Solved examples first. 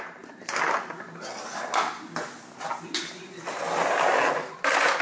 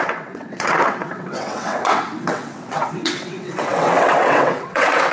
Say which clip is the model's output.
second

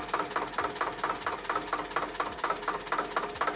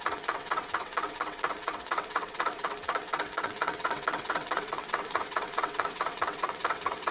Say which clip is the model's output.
second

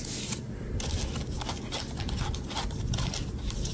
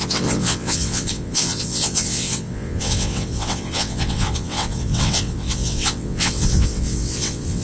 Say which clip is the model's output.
second